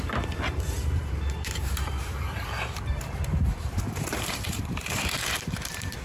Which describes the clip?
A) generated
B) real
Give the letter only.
A